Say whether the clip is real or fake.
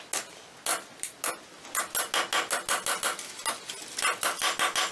real